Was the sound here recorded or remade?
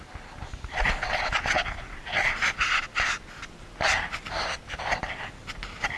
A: recorded